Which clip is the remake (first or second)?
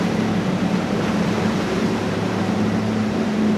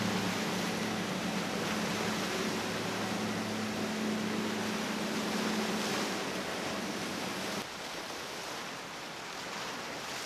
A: first